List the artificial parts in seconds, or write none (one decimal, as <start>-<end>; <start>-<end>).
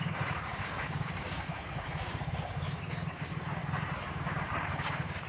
0.0-3.6; 4.1-5.3